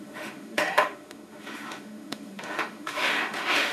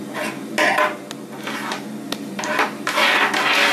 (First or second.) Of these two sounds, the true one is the second